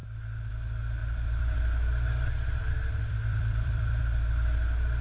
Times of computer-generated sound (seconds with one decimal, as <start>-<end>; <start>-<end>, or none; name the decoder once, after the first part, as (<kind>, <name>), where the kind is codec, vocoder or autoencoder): 1.0-4.0 (vocoder, BigVGAN v2)